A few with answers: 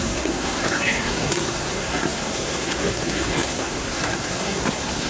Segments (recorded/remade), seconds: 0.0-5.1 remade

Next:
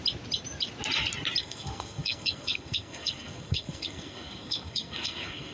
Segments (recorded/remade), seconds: 0.0-1.4 recorded; 1.4-5.5 remade

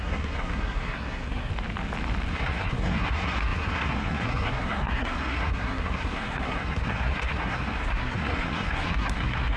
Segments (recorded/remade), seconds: 0.0-1.5 remade; 1.5-2.3 recorded; 2.3-9.6 remade

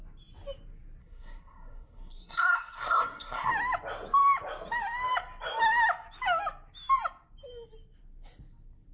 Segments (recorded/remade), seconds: 0.0-1.0 recorded; 1.0-3.5 remade; 3.5-8.9 recorded

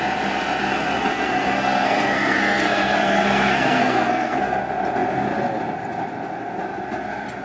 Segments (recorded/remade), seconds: 0.0-0.6 recorded; 0.6-4.6 remade; 4.6-7.4 recorded

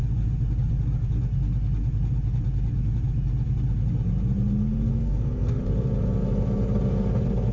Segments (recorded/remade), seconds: 0.0-4.9 recorded; 4.9-5.6 remade; 5.6-7.5 recorded

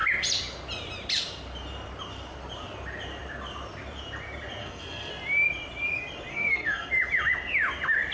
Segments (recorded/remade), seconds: 0.0-4.6 recorded; 4.6-5.1 remade; 5.1-6.3 recorded; 6.3-6.9 remade; 6.9-8.1 recorded

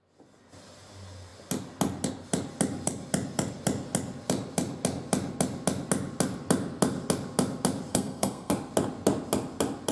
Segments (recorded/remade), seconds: 0.0-7.9 recorded; 7.9-8.5 remade; 8.5-9.9 recorded